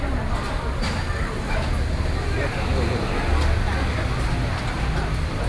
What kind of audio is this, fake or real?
real